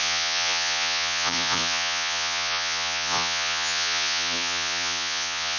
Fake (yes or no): yes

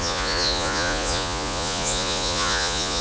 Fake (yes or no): yes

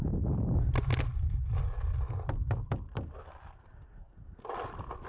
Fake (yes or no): no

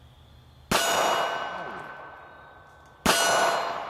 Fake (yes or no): no